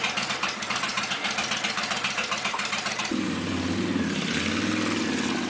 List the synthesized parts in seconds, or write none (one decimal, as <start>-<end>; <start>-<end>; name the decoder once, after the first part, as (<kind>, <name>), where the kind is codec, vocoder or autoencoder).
0.9-3.5 (vocoder, BigVGAN v2)